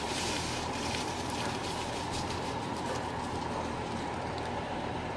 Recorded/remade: remade